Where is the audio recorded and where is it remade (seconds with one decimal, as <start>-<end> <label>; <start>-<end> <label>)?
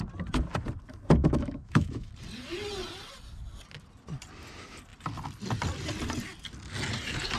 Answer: 0.0-1.2 recorded; 1.2-2.1 remade; 2.1-7.4 recorded